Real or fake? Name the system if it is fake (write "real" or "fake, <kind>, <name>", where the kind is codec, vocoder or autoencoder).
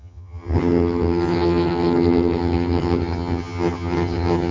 fake, vocoder, HiFi-GAN